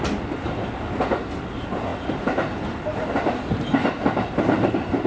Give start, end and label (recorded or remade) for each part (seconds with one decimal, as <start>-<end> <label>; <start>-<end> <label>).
0.0-5.1 recorded